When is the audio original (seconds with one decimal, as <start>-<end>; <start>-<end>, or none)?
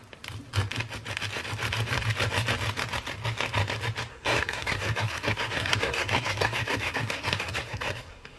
0.0-4.1